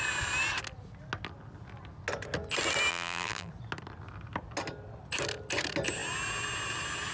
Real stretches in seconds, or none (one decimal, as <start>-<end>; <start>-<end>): 0.0-2.9; 3.5-7.1